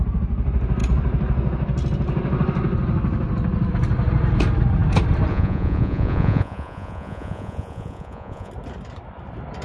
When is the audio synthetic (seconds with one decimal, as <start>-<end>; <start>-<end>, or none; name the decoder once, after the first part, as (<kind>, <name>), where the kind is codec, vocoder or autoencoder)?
5.3-8.5 (vocoder, Vocos)